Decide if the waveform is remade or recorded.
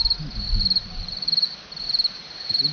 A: recorded